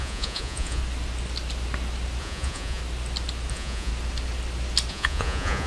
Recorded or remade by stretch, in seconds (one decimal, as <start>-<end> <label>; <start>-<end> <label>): 0.0-0.8 remade; 0.8-2.2 recorded; 2.2-2.8 remade; 2.8-3.5 recorded; 3.5-3.9 remade; 3.9-4.9 recorded; 4.9-5.7 remade